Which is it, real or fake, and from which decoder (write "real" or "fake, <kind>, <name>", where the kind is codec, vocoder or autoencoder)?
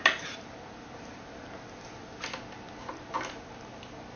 real